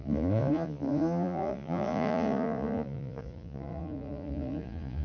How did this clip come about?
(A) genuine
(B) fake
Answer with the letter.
B